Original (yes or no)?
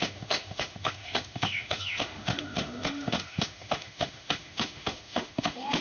no